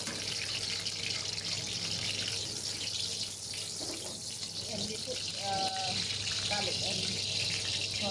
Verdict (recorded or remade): recorded